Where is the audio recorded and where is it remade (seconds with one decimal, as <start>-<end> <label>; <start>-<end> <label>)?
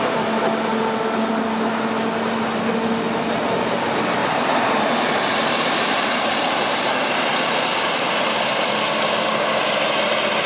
0.0-4.2 recorded; 4.2-6.9 remade; 6.9-10.5 recorded